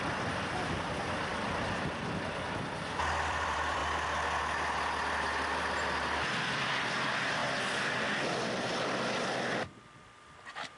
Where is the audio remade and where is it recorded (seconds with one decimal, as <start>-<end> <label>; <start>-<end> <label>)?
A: 0.0-3.8 remade; 3.8-6.7 recorded; 6.7-10.8 remade